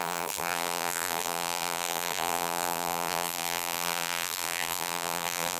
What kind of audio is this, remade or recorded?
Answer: remade